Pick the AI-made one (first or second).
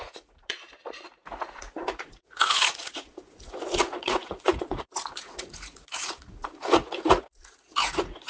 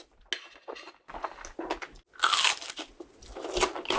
first